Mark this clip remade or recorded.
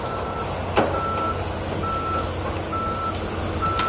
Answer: recorded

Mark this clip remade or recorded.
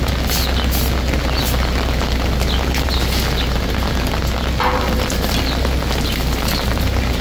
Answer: recorded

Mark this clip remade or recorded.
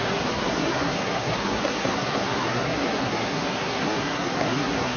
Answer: remade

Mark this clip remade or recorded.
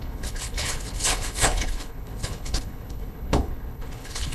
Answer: remade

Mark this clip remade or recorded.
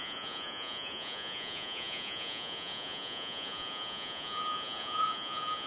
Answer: remade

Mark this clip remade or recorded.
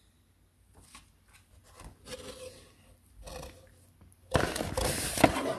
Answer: recorded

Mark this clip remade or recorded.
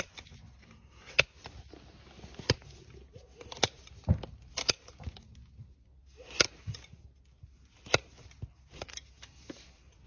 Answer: recorded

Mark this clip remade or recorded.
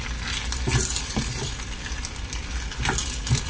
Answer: recorded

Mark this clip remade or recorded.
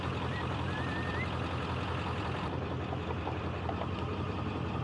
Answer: recorded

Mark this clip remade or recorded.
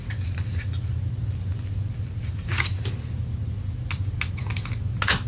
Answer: recorded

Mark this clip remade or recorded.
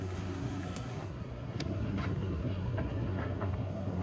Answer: remade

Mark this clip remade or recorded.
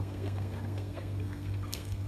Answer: remade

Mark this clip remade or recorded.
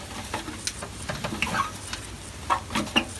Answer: recorded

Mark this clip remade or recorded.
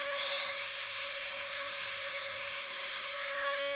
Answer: remade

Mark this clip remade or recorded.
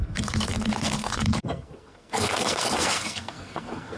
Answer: remade